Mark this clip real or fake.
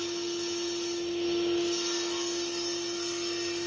real